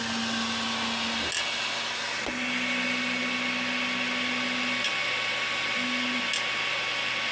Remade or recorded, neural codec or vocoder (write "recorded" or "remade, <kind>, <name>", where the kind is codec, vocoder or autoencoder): recorded